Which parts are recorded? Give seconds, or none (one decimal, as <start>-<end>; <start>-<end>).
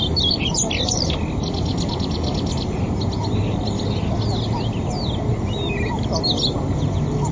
0.0-7.3